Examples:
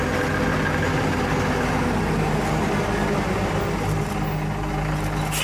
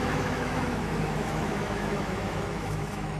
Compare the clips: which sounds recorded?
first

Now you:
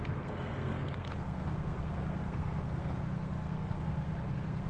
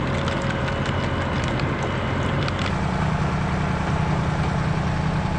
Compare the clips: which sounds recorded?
second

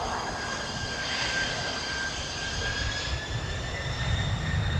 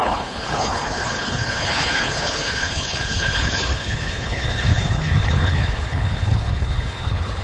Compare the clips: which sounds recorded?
first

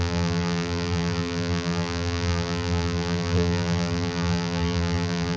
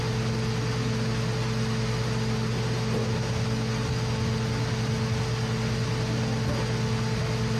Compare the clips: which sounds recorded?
second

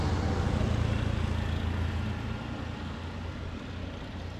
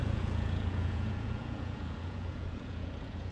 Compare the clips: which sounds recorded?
first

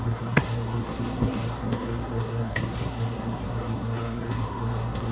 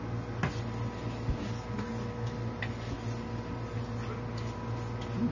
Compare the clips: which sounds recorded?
second